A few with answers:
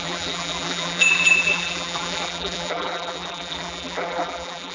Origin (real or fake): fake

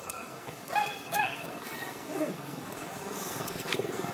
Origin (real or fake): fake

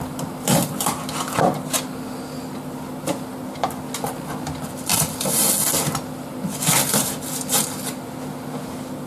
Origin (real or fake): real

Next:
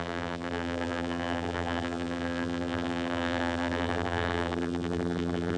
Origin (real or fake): fake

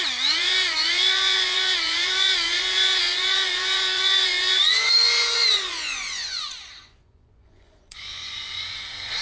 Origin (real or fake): fake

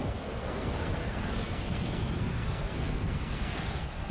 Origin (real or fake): fake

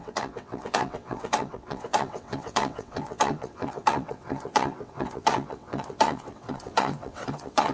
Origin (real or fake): fake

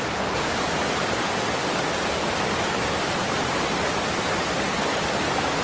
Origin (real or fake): real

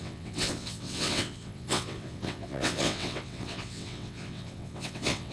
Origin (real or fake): fake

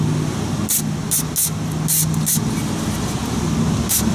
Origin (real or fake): real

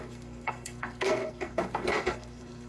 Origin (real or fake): fake